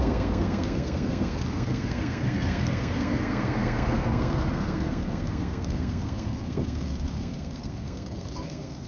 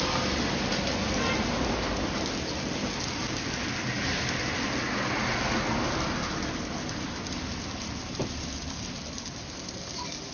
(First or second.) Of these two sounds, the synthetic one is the first